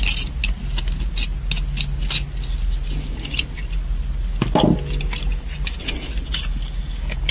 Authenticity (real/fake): real